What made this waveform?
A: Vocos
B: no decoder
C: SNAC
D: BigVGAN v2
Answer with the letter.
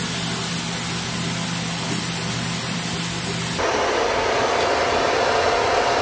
B